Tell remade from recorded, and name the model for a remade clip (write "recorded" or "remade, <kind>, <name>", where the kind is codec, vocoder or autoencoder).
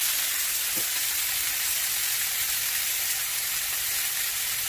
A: recorded